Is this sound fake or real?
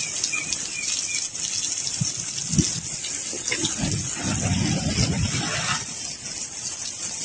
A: real